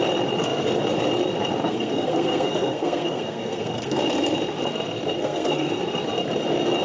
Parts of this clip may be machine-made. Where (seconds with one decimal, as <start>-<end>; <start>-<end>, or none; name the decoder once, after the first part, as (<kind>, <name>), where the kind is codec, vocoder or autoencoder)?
1.6-4.0 (codec, SNAC); 5.2-5.8